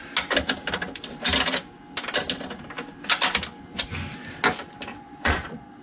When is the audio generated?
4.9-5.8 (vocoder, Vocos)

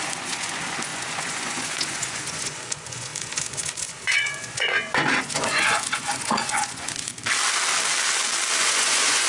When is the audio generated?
0.0-7.2 (vocoder, Vocos); 8.6-9.3